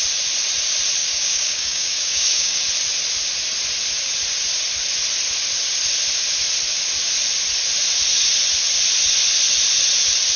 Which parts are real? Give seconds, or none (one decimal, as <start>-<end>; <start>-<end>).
0.0-1.0; 2.7-10.4